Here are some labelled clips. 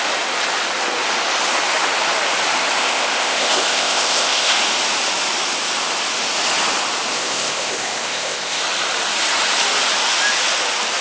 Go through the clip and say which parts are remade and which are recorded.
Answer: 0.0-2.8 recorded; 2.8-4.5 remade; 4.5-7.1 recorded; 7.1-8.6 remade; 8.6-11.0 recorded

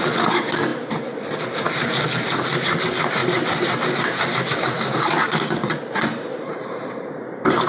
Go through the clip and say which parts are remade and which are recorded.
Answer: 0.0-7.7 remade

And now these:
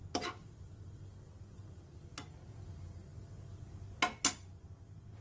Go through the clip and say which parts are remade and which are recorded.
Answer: 0.0-5.2 recorded

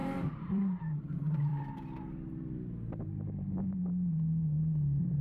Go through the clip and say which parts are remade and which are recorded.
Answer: 0.0-1.5 remade; 1.5-2.9 recorded; 2.9-5.2 remade

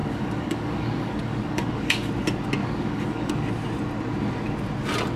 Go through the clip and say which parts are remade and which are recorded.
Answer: 0.0-2.1 remade; 2.1-2.6 recorded; 2.6-3.3 remade; 3.3-5.2 recorded

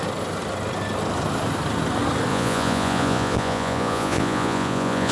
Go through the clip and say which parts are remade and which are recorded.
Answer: 0.0-2.3 recorded; 2.3-5.1 remade

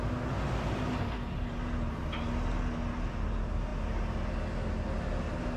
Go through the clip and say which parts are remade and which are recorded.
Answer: 0.0-5.6 recorded

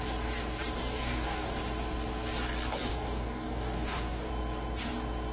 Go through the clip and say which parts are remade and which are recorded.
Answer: 0.0-0.8 recorded; 0.8-1.6 remade; 1.6-2.9 recorded; 2.9-4.3 remade; 4.3-5.3 recorded